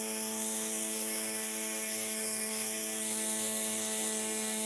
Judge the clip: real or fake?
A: fake